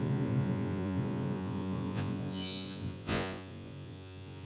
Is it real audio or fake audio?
fake